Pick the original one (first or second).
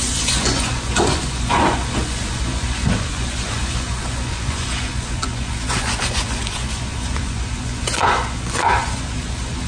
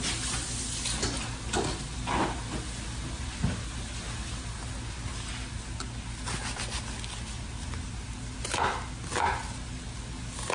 second